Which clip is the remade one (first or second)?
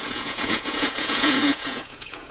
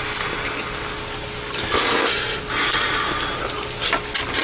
first